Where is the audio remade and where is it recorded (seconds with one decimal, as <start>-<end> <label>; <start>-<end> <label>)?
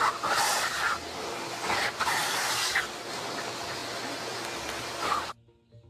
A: 0.0-5.9 recorded